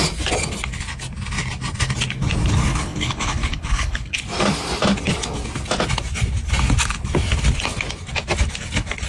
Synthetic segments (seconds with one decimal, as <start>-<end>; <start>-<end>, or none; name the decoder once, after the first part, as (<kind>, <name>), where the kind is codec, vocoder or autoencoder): 2.7-4.2 (codec, HILCodec)